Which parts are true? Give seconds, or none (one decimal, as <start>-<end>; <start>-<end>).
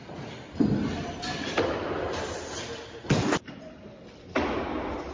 0.0-5.1